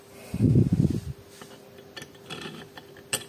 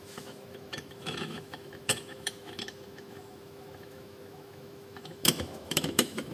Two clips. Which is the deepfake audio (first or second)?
second